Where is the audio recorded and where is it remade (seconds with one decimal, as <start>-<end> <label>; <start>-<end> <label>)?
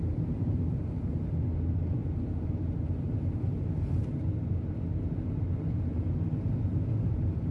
0.0-2.0 remade; 2.0-6.5 recorded; 6.5-7.5 remade